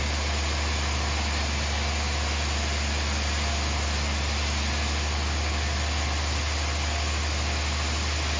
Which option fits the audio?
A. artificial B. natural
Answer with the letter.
B